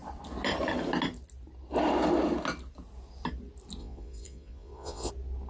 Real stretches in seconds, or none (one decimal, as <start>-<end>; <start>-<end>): 0.0-3.8; 5.1-5.5